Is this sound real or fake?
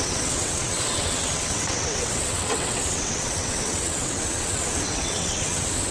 fake